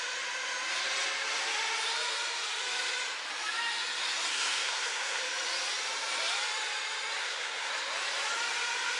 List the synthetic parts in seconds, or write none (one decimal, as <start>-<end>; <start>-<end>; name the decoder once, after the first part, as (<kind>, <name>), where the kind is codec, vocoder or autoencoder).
4.3-5.2 (codec, SNAC); 7.2-7.7